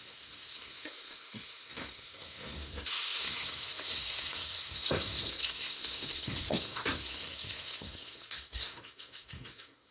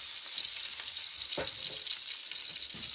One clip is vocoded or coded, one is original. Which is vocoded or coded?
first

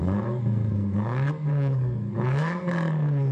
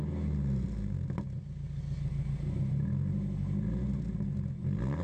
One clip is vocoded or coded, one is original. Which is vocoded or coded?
first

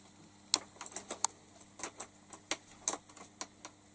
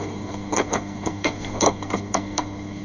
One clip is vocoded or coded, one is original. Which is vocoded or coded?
second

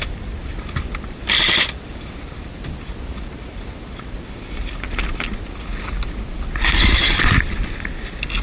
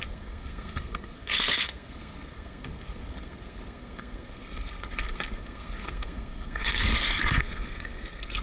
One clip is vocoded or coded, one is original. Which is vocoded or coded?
second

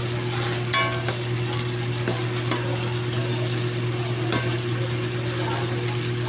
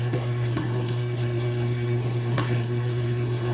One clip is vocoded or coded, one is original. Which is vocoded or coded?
second